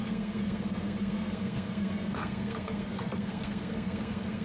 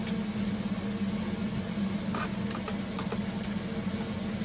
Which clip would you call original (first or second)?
second